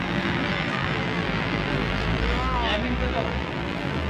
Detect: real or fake fake